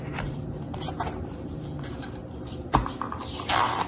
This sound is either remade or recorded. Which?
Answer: remade